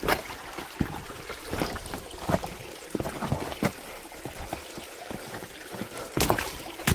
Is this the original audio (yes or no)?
no